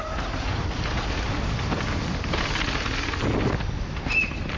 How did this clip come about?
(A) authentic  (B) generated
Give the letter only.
A